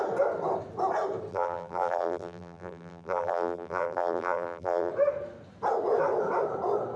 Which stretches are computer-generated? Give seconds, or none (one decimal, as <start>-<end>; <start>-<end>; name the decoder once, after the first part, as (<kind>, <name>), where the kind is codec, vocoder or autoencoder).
1.3-4.9 (vocoder, BigVGAN v2)